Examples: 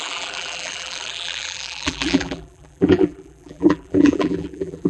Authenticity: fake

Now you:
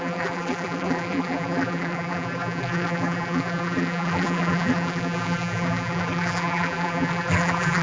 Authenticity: fake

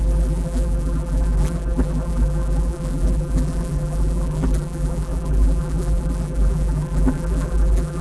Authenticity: fake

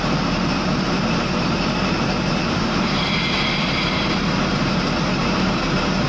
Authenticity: fake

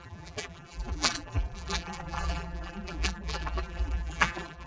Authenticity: fake